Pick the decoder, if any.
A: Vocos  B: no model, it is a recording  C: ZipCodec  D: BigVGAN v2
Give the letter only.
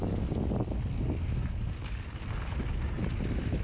B